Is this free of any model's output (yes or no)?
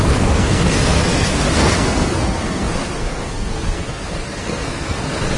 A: no